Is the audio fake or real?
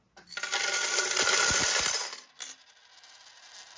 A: real